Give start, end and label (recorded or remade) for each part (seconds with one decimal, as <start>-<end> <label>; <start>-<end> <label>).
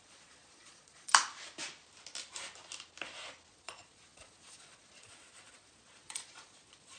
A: 0.0-1.1 remade; 1.1-3.5 recorded; 3.5-7.0 remade